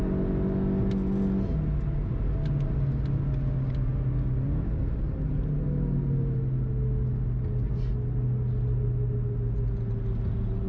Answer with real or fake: real